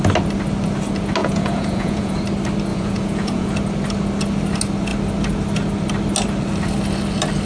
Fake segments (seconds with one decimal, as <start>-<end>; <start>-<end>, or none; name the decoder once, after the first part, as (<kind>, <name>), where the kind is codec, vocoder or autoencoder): 1.2-2.2 (vocoder, Vocos); 2.7-3.5